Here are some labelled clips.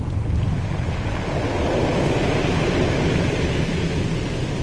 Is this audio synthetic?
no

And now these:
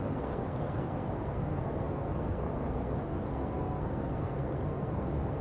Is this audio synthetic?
yes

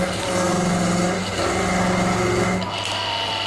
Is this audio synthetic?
no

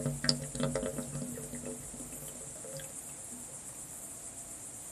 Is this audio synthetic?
no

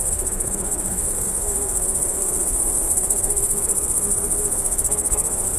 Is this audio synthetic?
yes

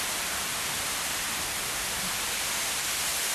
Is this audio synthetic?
no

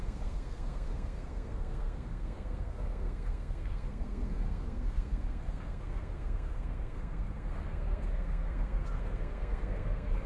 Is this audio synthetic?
yes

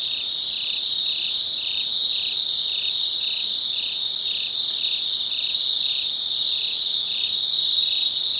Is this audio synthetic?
no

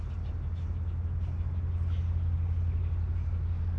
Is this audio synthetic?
no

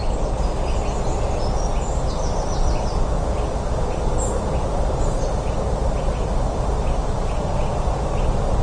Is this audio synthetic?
no